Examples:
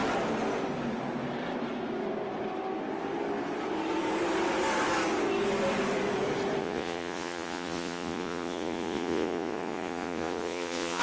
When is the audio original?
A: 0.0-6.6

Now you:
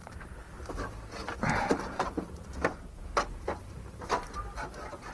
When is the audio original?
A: 0.6-1.2; 4.3-5.1

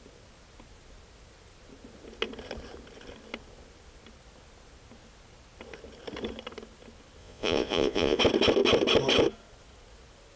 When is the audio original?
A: 0.0-7.2; 8.2-10.4

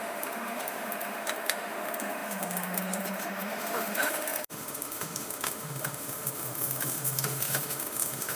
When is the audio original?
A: none

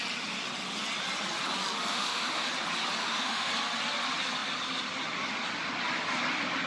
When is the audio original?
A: 0.0-1.9; 2.5-3.0; 3.5-6.7

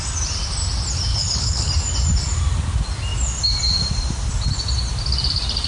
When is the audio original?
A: 0.0-1.1; 1.7-5.7

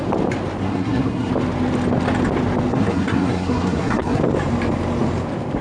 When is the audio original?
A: 0.0-0.6; 1.3-2.7; 4.2-5.6